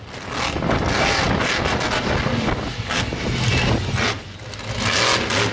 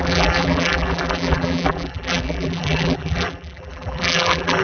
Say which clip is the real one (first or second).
first